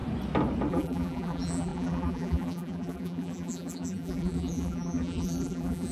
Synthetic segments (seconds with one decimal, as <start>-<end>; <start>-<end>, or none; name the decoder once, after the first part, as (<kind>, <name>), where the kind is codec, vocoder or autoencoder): 0.7-5.9 (vocoder, BigVGAN v2)